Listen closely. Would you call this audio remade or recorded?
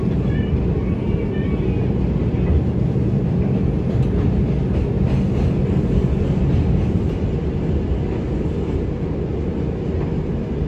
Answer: recorded